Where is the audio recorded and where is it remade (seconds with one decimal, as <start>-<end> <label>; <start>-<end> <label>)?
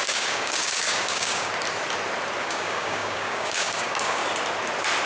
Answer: 0.0-1.5 remade; 1.5-2.4 recorded; 2.4-4.2 remade; 4.2-5.1 recorded